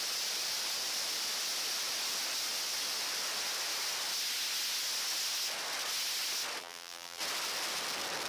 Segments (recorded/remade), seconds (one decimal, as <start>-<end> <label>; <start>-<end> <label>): 0.0-6.6 recorded; 6.6-7.2 remade; 7.2-8.3 recorded